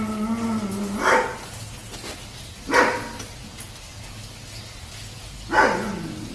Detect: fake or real real